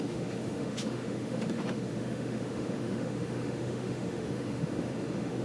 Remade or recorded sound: remade